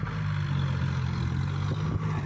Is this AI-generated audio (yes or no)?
no